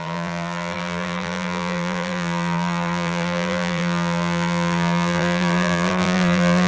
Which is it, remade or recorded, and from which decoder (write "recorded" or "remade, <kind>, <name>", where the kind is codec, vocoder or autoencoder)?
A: remade, vocoder, BigVGAN v2